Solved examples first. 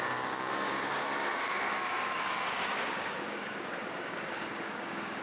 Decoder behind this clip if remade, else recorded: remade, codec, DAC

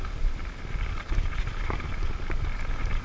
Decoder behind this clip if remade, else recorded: remade, vocoder, BigVGAN v2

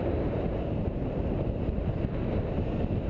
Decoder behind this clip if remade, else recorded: remade, vocoder, BigVGAN v2